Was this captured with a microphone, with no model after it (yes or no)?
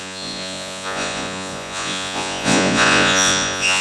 no